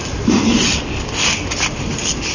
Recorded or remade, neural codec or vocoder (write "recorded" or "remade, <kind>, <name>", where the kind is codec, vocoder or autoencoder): recorded